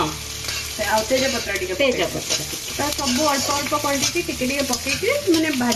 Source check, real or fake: real